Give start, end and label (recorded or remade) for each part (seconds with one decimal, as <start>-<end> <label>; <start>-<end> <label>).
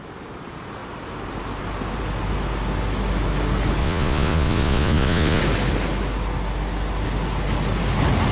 0.0-3.8 recorded; 3.8-5.4 remade; 5.4-8.3 recorded